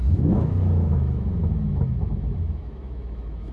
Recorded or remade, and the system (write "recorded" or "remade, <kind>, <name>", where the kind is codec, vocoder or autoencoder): remade, autoencoder, DAC-VAE